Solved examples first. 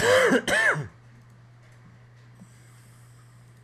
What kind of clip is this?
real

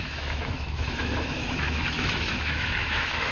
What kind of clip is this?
fake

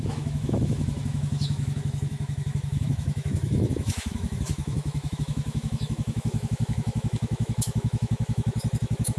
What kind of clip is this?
fake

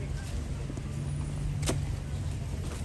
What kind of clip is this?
real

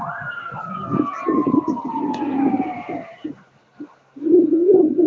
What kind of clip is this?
real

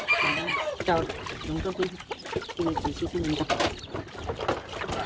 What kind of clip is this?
real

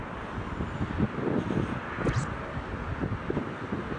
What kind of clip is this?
real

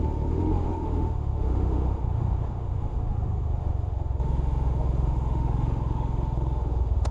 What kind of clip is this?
fake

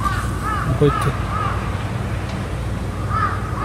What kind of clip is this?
real